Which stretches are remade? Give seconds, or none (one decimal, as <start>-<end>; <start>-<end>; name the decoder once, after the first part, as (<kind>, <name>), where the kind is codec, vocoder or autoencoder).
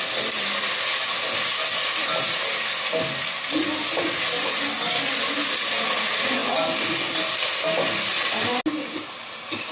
none